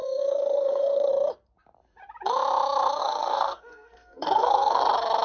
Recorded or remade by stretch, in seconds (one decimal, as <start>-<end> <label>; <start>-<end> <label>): 0.0-1.1 remade; 1.1-3.0 recorded; 3.0-4.8 remade; 4.8-5.2 recorded